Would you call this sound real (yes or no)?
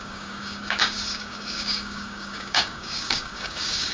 no